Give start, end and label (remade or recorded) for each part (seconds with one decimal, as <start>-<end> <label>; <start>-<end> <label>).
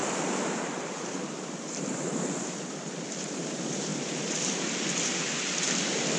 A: 0.0-6.2 remade